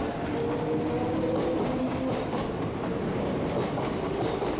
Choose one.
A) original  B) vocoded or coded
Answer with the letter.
A